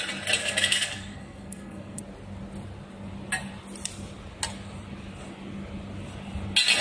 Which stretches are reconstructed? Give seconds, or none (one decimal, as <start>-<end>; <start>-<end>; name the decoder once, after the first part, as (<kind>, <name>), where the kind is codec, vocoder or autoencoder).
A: 0.4-2.0 (codec, SNAC)